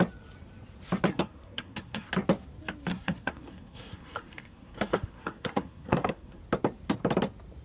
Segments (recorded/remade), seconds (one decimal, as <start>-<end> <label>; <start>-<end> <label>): 0.0-1.1 recorded; 1.1-2.1 remade; 2.1-2.9 recorded; 2.9-6.4 remade; 6.4-7.6 recorded